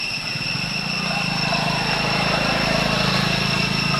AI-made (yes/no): yes